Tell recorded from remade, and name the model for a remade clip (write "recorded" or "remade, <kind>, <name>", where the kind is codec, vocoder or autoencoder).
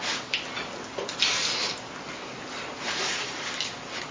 recorded